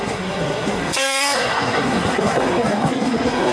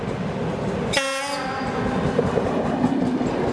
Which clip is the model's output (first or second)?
first